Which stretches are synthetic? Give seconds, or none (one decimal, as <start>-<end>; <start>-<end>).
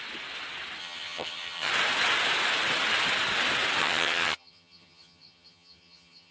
0.8-1.7; 3.8-6.3